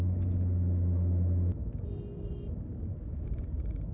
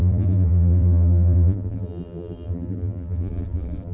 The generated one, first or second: second